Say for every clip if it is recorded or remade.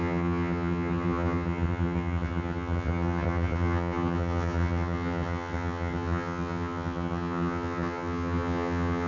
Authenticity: remade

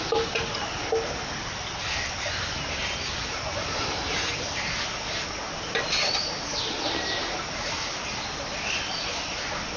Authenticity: recorded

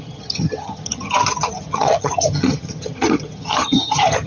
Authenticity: remade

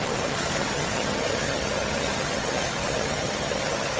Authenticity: remade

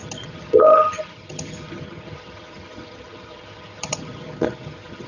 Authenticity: remade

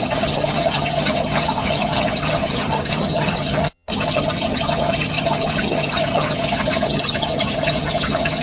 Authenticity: remade